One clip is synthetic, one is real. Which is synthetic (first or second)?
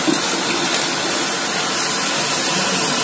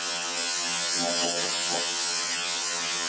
second